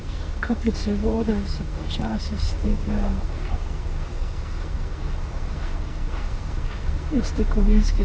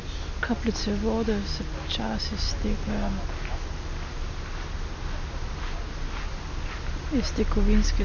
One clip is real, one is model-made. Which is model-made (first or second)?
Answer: first